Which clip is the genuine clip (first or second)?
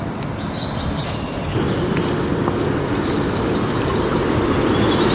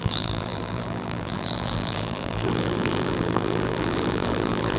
first